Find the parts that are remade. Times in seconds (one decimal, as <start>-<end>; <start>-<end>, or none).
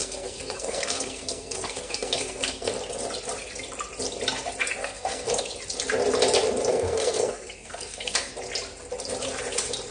0.0-2.7; 4.8-5.4; 6.7-8.3